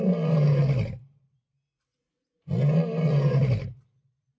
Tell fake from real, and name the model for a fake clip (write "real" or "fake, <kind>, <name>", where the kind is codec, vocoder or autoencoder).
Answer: real